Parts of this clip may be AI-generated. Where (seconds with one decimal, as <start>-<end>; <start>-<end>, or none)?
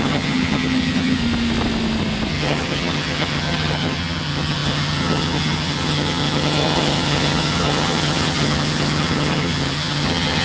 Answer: 0.0-1.2; 2.3-10.4